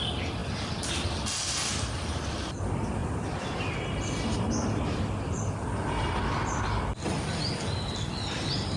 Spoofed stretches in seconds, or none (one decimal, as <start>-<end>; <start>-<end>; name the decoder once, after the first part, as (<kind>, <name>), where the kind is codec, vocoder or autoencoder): none

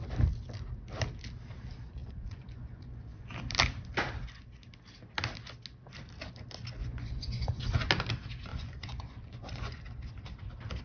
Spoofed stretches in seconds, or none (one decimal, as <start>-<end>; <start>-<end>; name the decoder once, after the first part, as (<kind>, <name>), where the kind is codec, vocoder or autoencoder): 2.0-3.3 (vocoder, Vocos); 6.8-7.9; 8.5-9.8

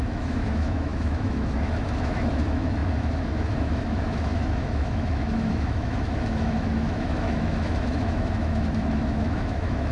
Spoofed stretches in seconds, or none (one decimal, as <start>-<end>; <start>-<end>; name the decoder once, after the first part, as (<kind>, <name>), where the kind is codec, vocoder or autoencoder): 0.0-9.9 (autoencoder, DAC-VAE)

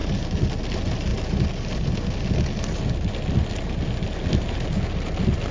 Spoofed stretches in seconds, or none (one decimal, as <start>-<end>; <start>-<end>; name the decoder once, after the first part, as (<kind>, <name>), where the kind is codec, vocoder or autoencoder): none

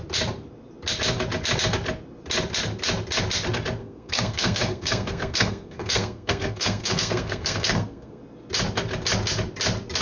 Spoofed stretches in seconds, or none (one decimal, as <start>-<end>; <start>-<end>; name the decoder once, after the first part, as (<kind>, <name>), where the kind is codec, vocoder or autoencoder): 3.8-8.2 (codec, SNAC)

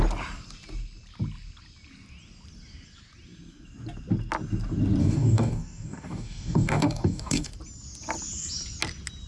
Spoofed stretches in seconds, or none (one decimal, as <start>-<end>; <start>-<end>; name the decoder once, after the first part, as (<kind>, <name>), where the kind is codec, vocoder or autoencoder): 5.0-7.5 (codec, DAC)

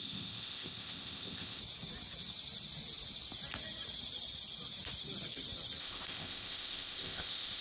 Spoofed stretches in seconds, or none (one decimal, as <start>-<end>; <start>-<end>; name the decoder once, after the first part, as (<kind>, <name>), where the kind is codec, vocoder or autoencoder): 0.0-1.6 (codec, ZipCodec); 5.8-7.6